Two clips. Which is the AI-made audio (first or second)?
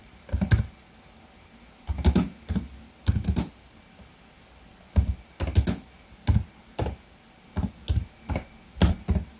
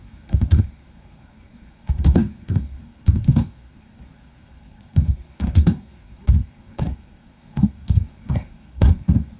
second